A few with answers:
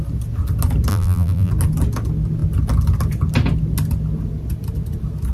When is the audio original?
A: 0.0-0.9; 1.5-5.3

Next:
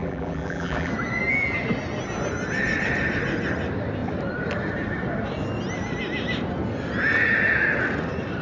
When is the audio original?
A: 0.9-8.4

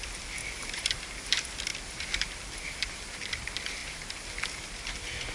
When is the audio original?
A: none

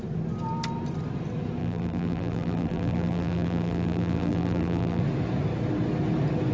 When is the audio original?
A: 0.0-1.6; 5.0-6.5

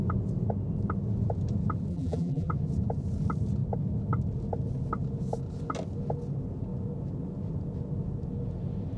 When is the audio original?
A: 0.0-1.9; 2.5-9.0

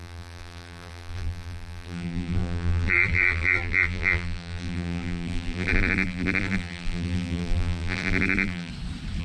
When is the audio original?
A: 8.7-9.2

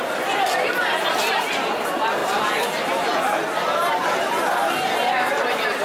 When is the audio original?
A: 2.2-3.0; 3.4-5.8

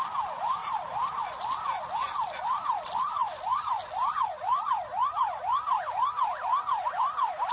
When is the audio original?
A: 0.0-0.6; 1.2-7.5